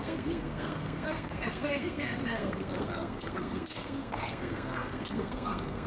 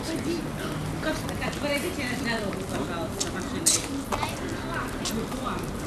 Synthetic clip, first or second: first